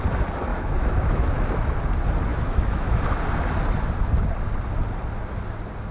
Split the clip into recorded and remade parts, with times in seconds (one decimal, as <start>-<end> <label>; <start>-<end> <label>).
0.0-0.5 recorded; 0.5-1.2 remade; 1.2-2.3 recorded; 2.3-3.0 remade; 3.0-5.9 recorded